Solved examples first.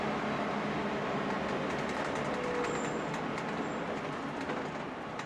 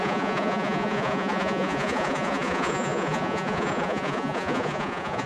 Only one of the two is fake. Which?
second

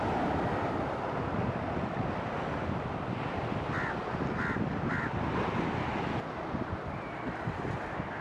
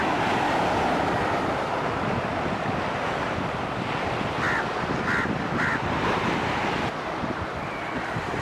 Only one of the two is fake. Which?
second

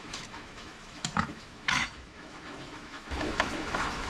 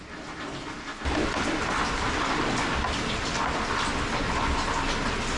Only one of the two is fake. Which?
first